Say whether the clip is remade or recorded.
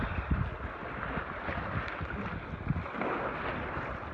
recorded